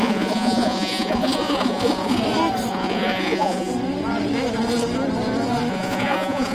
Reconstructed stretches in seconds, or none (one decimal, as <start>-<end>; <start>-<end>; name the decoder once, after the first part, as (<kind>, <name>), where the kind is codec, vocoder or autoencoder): 0.0-2.2 (vocoder, Vocos); 2.7-3.7; 5.7-6.5

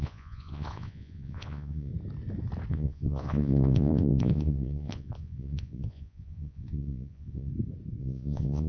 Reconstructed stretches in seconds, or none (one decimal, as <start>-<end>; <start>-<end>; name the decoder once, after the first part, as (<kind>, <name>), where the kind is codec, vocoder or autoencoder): 0.0-1.9 (vocoder, Vocos); 2.7-7.5; 8.0-8.7

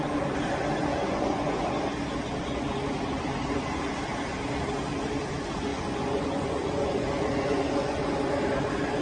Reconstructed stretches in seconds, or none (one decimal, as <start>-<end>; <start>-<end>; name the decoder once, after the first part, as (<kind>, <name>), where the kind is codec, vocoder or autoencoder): 0.9-1.6 (vocoder, Vocos); 5.7-8.0

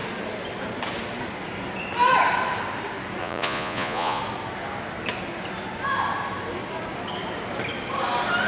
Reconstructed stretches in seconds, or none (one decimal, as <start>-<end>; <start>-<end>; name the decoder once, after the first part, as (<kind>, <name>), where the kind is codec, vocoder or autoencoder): 3.2-4.2 (vocoder, Vocos)

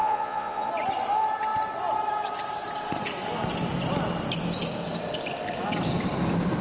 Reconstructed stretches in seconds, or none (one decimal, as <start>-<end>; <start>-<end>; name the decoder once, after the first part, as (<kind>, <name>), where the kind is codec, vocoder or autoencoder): 0.0-0.7 (vocoder, Vocos)

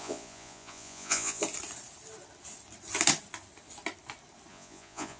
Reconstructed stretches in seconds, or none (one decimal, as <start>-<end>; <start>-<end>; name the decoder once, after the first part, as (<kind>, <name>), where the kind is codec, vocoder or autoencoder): 0.0-1.4 (vocoder, Vocos); 4.5-5.2